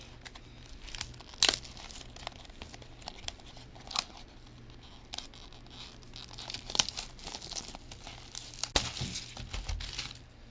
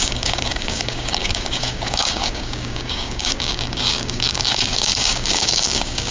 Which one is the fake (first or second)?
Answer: second